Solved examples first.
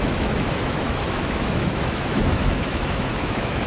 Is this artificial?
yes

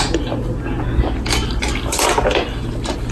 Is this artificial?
no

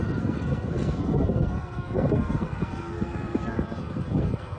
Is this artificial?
yes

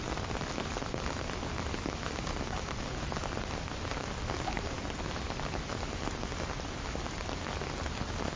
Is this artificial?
no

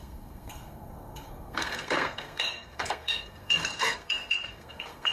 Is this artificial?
yes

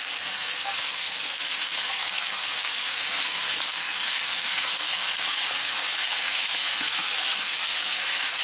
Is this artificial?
yes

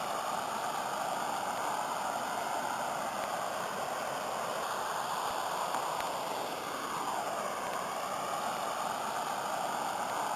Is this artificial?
no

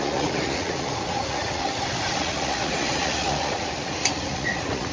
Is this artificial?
yes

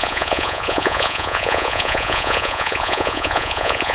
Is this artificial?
yes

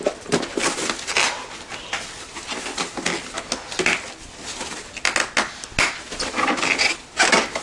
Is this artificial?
no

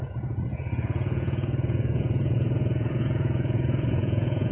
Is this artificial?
yes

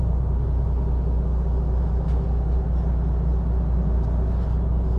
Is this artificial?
no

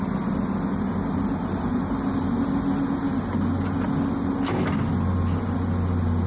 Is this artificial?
no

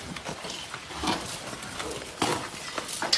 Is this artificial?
no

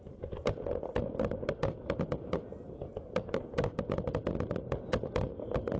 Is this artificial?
no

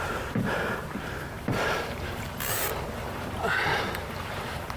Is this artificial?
yes